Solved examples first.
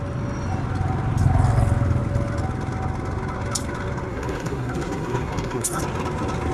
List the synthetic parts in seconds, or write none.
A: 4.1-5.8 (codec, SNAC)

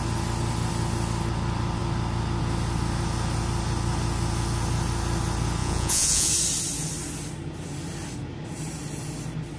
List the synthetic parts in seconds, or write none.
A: 5.6-6.3 (vocoder, Vocos)

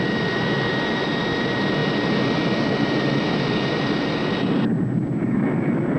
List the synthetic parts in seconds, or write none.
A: none

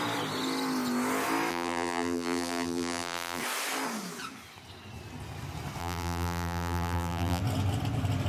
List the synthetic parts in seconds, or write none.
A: 1.5-3.4 (vocoder, BigVGAN v2); 5.8-7.4

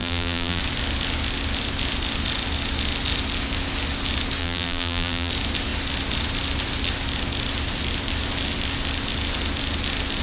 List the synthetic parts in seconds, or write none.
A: 0.0-0.6 (vocoder, BigVGAN v2); 4.4-5.3